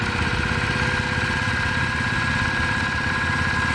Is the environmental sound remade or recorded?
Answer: recorded